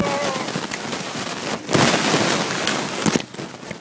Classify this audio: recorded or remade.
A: recorded